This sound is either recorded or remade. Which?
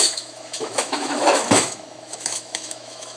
remade